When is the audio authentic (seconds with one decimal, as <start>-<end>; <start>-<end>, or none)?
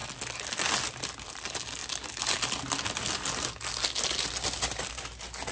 0.0-5.5